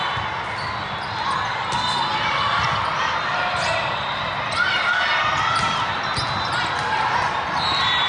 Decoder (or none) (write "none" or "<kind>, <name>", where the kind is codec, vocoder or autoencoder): none